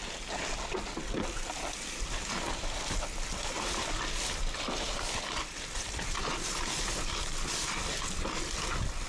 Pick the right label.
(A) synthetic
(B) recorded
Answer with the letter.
B